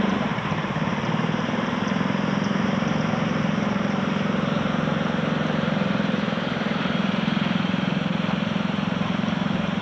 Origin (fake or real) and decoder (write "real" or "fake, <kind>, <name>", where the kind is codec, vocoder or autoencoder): fake, vocoder, BigVGAN v2